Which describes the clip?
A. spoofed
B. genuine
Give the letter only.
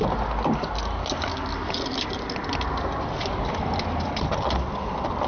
B